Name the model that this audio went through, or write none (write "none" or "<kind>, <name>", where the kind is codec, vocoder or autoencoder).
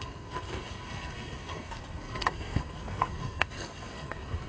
codec, SNAC